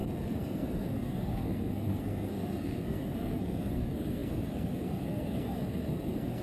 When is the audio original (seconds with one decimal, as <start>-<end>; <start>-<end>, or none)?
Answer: none